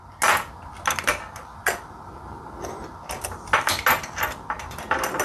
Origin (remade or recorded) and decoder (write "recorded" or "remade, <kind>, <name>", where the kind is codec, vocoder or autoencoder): recorded